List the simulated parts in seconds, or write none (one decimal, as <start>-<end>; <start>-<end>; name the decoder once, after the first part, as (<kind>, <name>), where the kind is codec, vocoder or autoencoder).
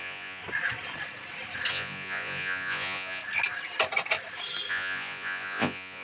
0.0-0.4 (vocoder, Vocos); 1.7-3.2; 4.7-6.0